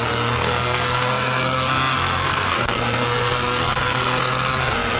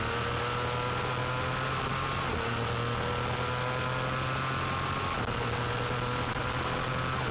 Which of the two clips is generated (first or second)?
first